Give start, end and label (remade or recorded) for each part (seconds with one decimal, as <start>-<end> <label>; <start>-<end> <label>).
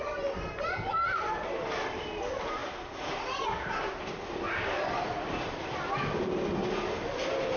0.0-7.6 recorded